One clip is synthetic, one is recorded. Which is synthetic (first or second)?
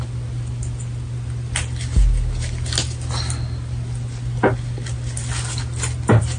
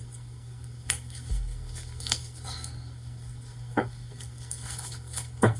second